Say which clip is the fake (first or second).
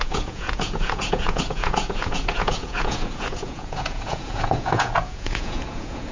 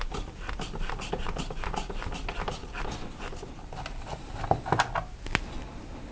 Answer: first